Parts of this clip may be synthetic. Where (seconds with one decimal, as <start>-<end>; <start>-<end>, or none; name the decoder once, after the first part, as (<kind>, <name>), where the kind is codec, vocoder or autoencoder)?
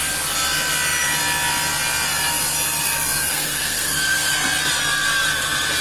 3.3-4.3 (codec, SNAC)